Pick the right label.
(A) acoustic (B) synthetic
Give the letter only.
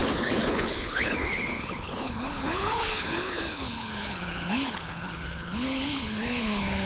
B